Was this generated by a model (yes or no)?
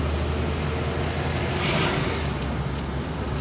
no